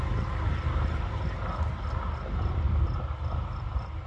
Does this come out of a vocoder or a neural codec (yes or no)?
no